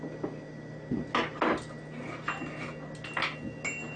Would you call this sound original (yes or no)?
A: yes